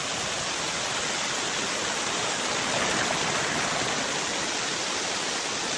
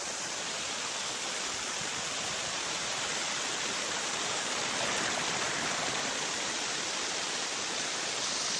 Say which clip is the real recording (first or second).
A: first